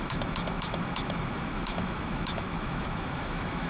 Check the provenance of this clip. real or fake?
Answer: fake